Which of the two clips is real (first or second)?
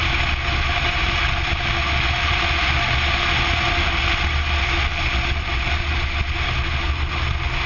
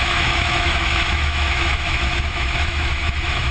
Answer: first